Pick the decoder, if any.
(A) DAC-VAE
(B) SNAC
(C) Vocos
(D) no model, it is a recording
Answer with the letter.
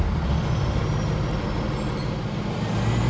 D